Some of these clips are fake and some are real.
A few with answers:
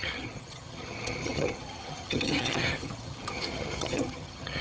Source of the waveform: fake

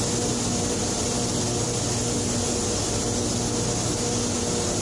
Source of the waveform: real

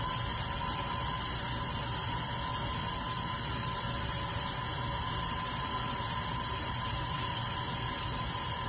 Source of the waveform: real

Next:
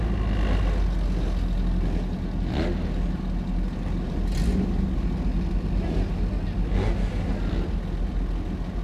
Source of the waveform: real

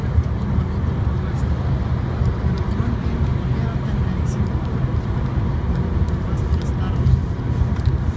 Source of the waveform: real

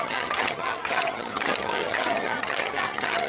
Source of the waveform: fake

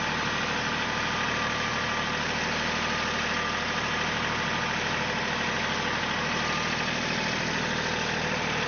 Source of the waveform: real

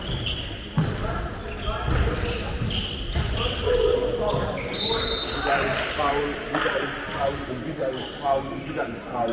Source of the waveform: real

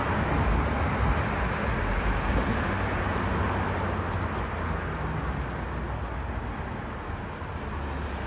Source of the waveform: real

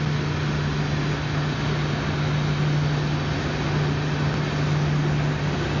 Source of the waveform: real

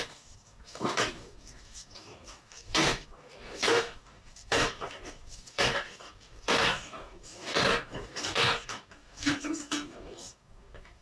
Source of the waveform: fake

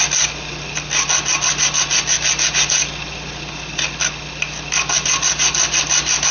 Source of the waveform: real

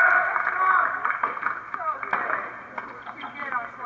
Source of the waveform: real